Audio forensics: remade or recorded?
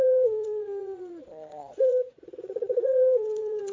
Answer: remade